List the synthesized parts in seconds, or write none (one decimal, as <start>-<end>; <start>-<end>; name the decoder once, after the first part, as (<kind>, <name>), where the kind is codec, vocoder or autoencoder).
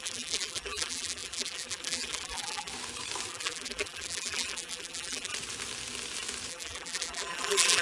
0.0-2.7 (vocoder, BigVGAN v2); 3.3-5.3; 6.5-7.8